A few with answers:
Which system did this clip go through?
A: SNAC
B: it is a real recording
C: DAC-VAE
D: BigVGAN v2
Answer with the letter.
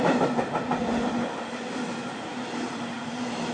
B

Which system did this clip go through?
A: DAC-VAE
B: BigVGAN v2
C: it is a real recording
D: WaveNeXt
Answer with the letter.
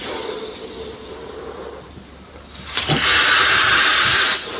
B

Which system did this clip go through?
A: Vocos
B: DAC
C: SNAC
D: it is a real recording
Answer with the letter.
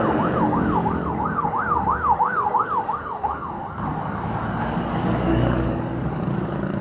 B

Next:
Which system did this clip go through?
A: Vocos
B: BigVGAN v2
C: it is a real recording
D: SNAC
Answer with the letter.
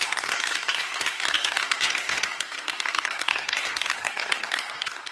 D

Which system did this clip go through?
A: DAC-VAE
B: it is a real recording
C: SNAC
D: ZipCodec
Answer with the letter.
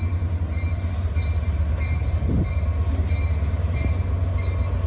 B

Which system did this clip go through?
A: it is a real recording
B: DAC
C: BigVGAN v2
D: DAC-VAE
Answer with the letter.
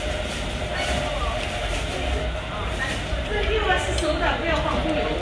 A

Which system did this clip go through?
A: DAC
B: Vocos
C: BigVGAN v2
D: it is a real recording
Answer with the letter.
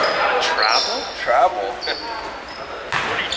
D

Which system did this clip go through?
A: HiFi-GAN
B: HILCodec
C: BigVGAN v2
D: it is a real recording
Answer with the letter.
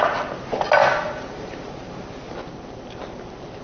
D